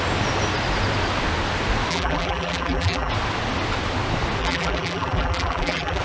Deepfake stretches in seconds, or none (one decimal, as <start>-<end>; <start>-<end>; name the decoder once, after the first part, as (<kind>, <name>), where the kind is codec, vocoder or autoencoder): 1.9-3.1 (vocoder, BigVGAN v2); 4.4-6.0